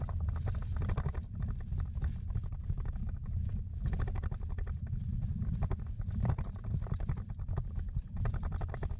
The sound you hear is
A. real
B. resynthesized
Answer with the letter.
A